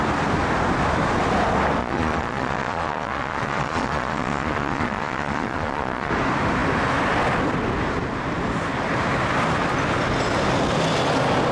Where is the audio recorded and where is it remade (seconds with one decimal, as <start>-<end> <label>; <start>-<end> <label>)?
0.0-1.8 recorded; 1.8-6.1 remade; 6.1-11.5 recorded